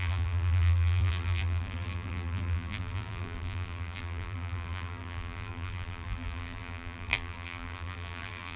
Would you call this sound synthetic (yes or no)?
yes